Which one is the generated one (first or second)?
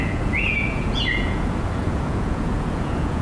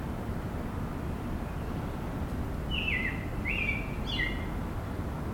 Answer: first